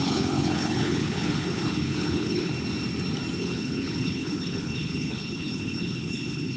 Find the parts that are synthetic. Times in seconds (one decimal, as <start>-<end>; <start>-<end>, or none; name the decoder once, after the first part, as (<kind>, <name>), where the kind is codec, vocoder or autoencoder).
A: 0.0-2.5 (codec, HILCodec); 3.4-6.6